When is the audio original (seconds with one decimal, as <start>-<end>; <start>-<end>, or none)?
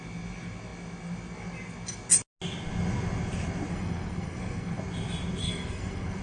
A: 0.0-3.7; 4.8-5.4